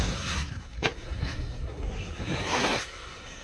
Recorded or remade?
remade